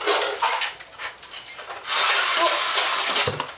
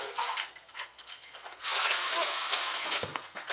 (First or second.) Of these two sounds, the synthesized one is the second